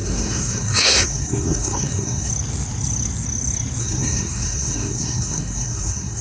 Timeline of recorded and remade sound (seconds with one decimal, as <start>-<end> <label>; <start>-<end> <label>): 0.0-2.3 remade; 2.3-3.8 recorded; 3.8-6.2 remade